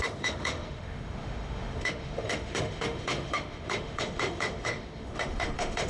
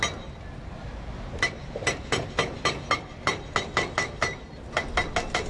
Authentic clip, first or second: second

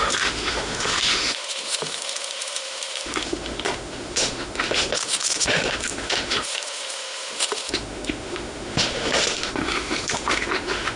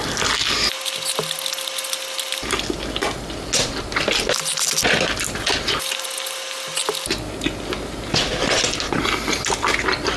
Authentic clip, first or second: second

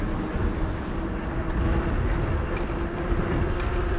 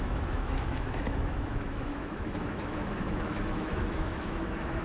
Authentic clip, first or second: first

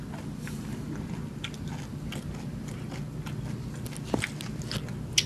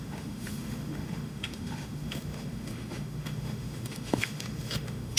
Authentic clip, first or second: first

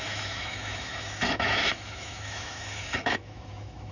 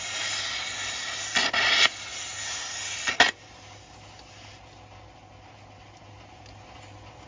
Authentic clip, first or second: second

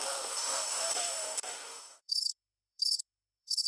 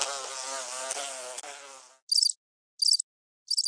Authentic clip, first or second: second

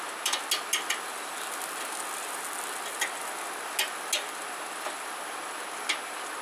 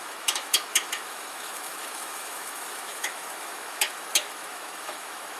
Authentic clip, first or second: first